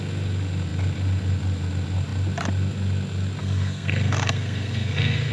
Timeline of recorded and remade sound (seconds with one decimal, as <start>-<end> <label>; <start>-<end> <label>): 0.0-3.4 recorded; 3.4-5.3 remade